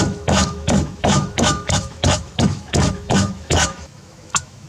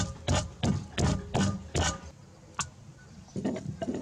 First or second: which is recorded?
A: second